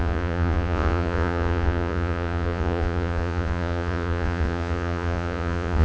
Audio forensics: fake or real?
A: fake